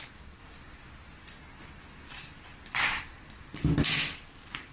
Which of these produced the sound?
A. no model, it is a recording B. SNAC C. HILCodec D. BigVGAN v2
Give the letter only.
A